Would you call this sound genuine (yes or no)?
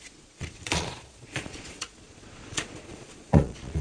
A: no